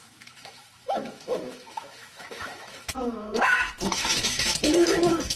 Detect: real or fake fake